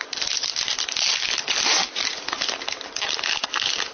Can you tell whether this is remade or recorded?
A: recorded